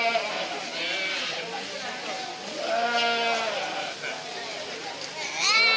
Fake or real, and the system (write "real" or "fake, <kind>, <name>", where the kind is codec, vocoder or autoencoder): real